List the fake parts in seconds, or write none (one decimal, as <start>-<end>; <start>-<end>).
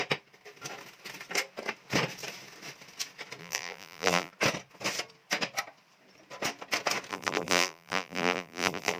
3.4-4.3; 7.1-9.0